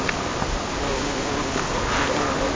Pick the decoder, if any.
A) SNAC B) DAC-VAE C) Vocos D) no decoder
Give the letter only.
D